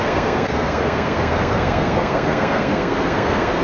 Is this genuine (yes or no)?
no